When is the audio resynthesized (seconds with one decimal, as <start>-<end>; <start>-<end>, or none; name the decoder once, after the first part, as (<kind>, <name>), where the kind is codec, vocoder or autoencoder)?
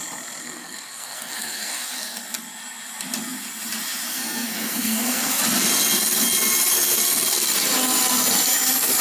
0.4-2.2 (codec, SNAC); 4.1-5.4